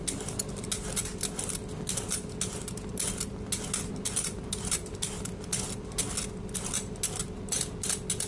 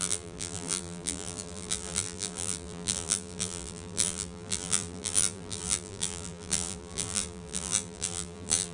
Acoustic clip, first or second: first